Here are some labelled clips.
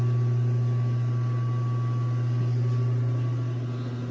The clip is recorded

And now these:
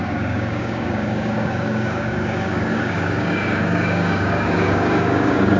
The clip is remade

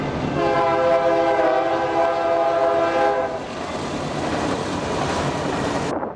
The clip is recorded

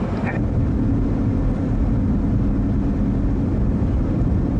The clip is recorded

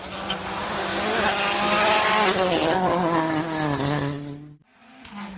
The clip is recorded